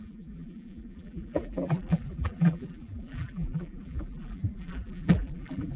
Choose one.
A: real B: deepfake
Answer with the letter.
B